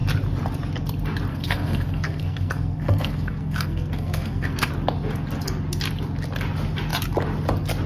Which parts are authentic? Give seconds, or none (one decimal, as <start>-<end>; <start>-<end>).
0.0-1.3; 4.7-7.9